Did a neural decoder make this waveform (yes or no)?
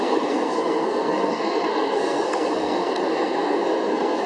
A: yes